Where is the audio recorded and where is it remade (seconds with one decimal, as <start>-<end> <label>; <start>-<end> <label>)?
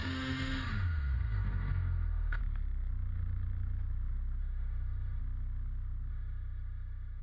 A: 0.0-2.4 remade; 2.4-4.4 recorded; 4.4-5.2 remade; 5.2-6.1 recorded; 6.1-7.2 remade